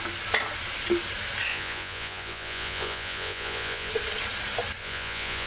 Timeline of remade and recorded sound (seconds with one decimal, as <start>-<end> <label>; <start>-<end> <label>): 0.0-1.5 recorded; 1.5-3.9 remade; 3.9-4.8 recorded; 4.8-5.5 remade